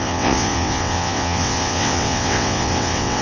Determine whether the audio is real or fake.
fake